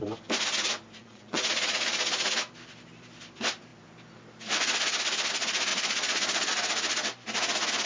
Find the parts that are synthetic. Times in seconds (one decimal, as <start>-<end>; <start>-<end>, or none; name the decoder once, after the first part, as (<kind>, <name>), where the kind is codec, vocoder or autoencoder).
1.0-2.3 (vocoder, Vocos); 5.7-6.5